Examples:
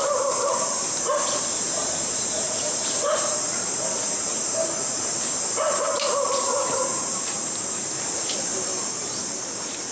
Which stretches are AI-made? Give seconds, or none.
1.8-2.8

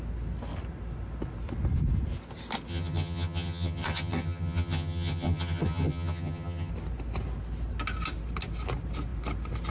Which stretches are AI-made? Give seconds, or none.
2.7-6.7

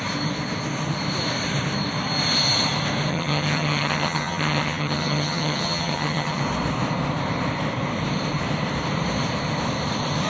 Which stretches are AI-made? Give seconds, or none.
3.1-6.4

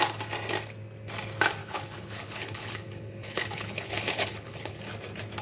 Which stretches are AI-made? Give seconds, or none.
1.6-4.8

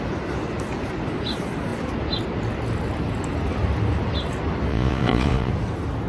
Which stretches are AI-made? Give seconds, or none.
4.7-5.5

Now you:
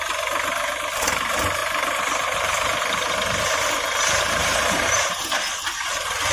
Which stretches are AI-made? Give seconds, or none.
4.4-5.2

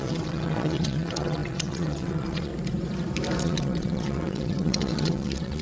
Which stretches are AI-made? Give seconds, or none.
0.0-2.5; 3.4-5.6

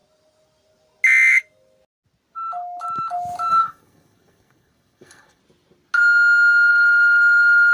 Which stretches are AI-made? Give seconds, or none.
3.5-5.4; 6.7-7.7